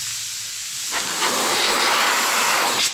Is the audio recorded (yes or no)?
yes